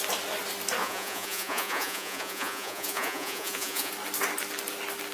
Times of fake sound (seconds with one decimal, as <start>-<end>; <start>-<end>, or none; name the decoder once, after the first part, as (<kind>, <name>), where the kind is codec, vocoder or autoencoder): 0.8-3.9 (vocoder, Vocos)